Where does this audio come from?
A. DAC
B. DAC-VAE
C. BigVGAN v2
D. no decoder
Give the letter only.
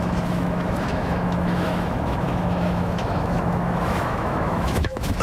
B